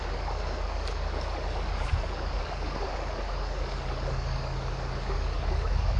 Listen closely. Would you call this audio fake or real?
fake